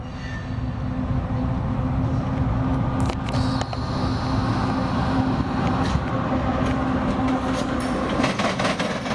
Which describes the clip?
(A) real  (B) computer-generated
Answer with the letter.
A